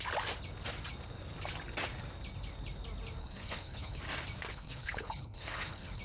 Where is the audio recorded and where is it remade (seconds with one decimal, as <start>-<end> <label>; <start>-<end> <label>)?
0.0-3.2 recorded; 3.2-4.0 remade; 4.0-4.5 recorded; 4.5-6.0 remade